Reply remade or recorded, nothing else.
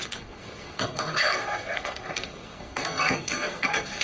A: remade